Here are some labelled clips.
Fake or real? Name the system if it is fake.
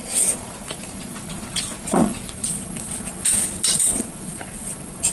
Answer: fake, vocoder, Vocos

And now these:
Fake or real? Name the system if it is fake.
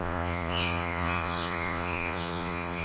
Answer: fake, vocoder, Vocos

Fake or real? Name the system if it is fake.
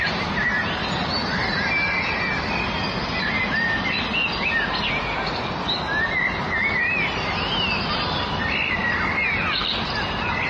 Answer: real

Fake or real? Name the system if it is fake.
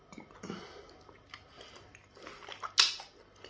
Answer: real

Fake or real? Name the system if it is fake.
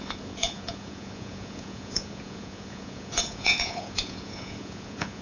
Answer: fake, vocoder, Vocos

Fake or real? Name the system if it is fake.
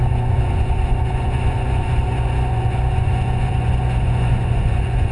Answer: fake, vocoder, Vocos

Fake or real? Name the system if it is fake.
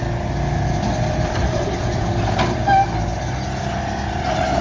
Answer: real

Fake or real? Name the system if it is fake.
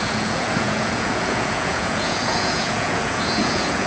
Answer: fake, vocoder, Vocos